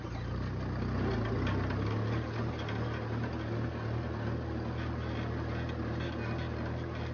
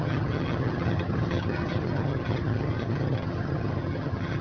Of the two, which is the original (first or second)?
first